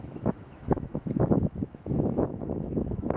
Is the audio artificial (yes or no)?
yes